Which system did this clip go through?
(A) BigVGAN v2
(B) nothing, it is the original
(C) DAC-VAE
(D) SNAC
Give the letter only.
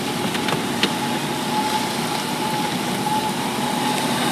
B